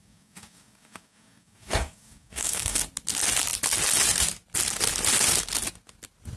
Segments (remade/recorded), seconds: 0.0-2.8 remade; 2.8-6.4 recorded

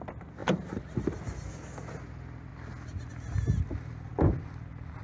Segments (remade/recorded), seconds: 0.0-5.0 recorded